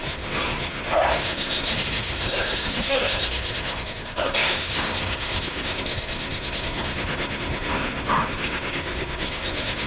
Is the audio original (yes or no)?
no